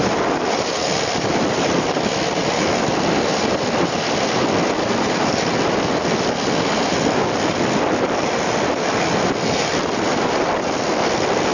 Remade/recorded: recorded